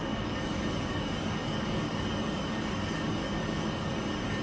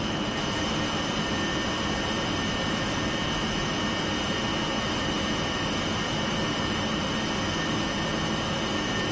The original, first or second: second